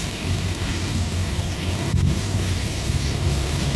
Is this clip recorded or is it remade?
remade